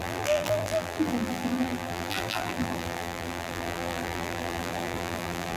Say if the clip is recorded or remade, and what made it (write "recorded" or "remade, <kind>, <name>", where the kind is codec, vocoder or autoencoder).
remade, vocoder, BigVGAN v2